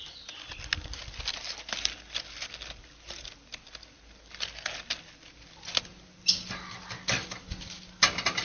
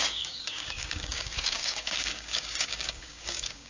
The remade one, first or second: second